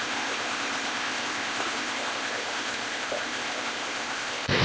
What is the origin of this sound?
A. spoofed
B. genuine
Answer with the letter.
A